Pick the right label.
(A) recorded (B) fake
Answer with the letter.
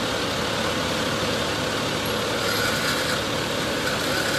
A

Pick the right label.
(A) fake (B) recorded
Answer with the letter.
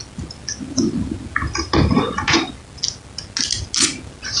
B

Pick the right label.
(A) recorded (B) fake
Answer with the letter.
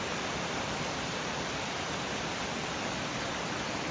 B